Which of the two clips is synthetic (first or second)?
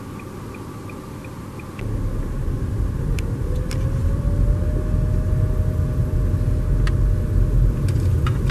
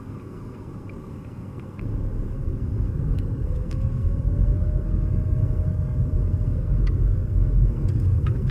second